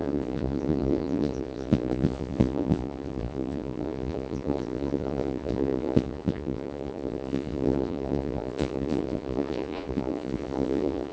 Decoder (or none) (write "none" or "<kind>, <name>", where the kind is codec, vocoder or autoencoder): vocoder, Vocos